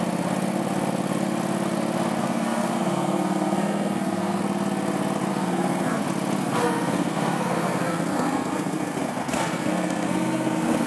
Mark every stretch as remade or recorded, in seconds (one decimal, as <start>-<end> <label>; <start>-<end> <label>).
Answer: 0.0-2.2 recorded; 2.2-4.4 remade; 4.4-5.3 recorded; 5.3-6.0 remade; 6.0-6.4 recorded; 6.4-10.9 remade